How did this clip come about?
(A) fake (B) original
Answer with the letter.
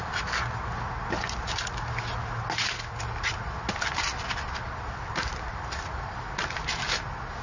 B